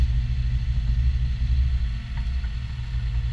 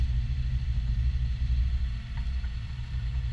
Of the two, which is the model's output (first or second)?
second